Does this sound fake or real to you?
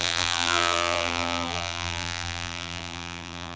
fake